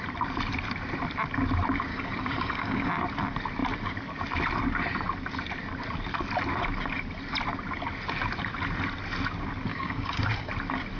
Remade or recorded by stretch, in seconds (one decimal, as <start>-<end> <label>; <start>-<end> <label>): 0.0-1.9 recorded; 1.9-2.9 remade; 2.9-9.7 recorded; 9.7-10.5 remade; 10.5-11.0 recorded